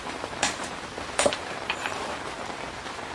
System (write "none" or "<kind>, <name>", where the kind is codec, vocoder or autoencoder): vocoder, BigVGAN v2